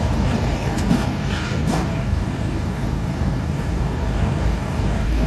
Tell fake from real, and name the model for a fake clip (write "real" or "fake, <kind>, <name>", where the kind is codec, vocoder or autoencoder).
fake, codec, DAC